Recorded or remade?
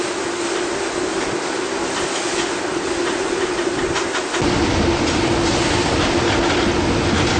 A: recorded